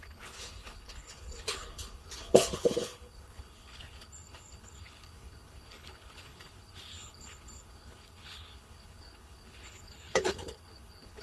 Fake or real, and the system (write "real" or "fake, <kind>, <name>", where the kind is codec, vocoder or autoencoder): fake, codec, HILCodec